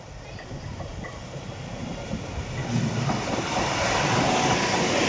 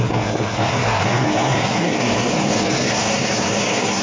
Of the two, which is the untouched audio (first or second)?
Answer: first